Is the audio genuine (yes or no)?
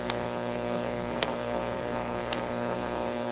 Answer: no